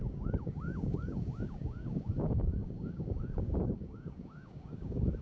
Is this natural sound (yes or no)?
no